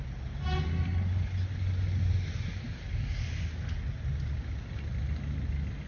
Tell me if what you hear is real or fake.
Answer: real